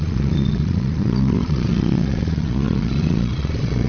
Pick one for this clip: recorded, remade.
remade